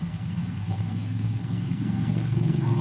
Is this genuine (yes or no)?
no